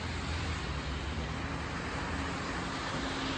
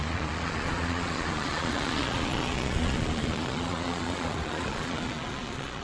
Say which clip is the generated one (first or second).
second